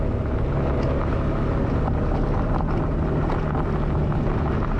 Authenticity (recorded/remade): recorded